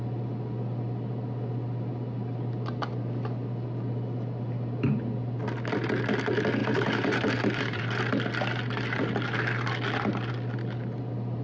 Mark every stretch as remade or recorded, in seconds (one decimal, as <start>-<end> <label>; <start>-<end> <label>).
0.0-6.6 recorded; 6.6-8.0 remade; 8.0-11.4 recorded